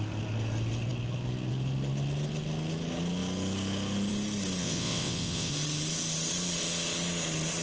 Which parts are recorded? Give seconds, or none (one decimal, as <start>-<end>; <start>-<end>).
0.0-4.6; 5.5-7.6